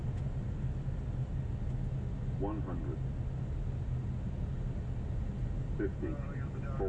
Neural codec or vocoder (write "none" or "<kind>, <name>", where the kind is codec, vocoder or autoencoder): none